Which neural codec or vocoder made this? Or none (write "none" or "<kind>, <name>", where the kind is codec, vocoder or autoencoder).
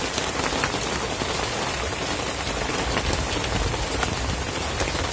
none